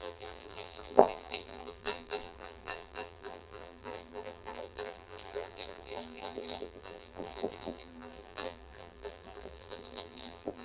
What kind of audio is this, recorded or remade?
remade